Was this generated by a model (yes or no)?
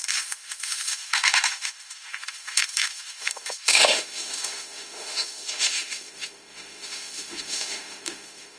yes